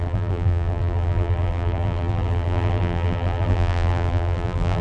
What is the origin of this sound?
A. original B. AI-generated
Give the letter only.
B